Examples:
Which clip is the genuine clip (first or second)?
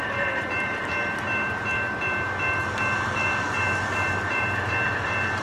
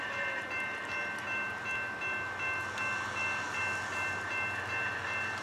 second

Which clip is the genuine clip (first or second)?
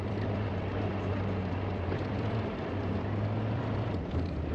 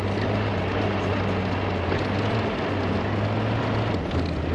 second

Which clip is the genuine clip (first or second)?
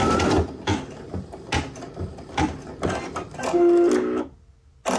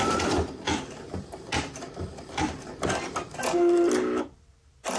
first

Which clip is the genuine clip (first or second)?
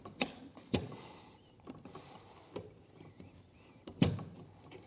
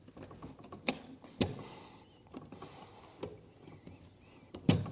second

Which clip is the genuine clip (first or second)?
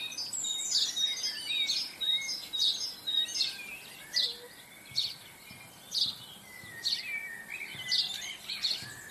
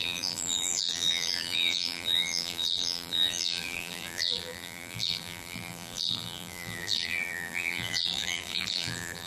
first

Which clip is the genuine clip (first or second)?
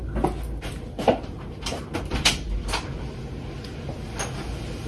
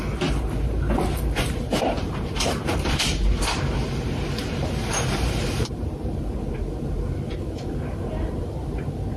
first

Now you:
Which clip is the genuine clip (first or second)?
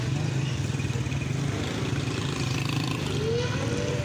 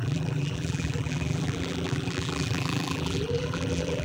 first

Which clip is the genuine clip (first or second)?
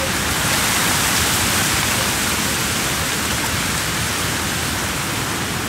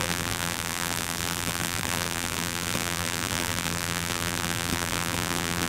first